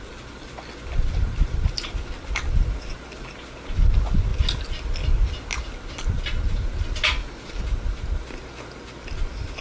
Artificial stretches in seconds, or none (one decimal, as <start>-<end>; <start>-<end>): none